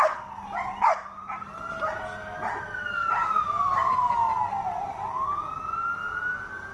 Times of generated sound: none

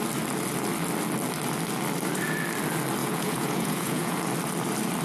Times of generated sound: 3.0-4.2 (vocoder, Vocos)